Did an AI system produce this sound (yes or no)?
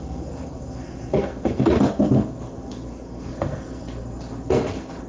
yes